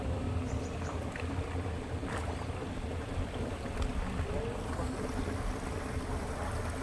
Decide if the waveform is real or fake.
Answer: real